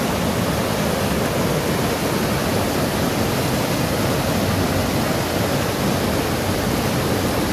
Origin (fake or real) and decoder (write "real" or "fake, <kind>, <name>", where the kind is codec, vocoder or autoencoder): real